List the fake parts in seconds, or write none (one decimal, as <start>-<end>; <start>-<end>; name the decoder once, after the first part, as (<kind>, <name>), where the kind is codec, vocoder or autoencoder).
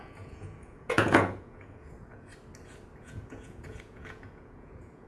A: 0.0-2.3 (vocoder, Vocos); 3.0-5.1